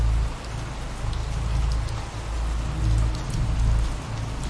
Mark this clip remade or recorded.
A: recorded